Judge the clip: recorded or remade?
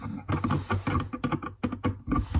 recorded